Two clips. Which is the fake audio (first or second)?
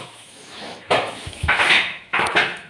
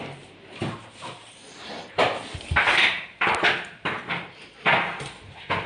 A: first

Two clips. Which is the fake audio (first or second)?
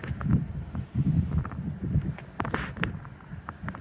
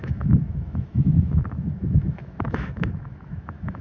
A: second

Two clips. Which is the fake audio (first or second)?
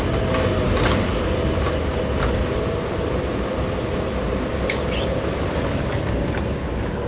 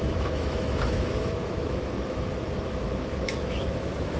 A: second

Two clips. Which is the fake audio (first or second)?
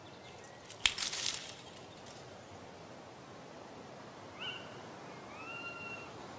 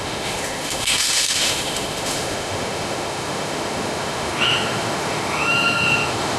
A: second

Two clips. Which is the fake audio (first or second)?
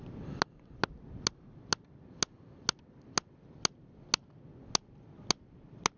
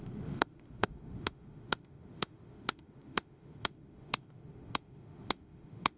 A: second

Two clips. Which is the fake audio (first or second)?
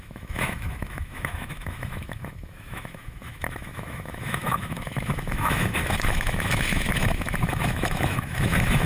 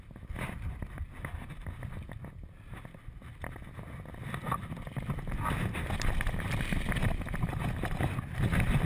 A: first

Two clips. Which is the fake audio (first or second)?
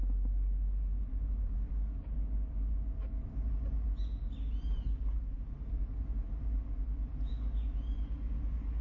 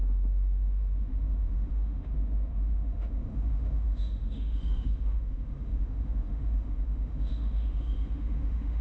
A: second